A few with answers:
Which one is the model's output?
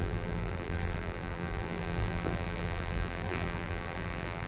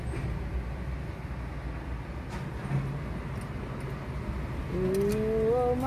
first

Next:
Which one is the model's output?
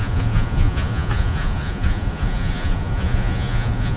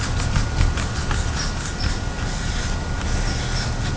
first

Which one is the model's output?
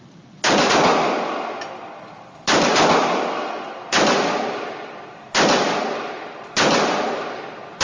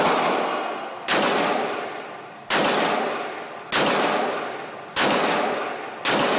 first